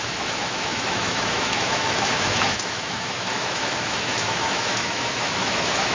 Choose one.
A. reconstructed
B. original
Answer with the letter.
A